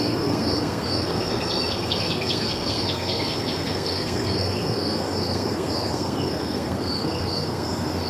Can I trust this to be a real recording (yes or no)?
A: no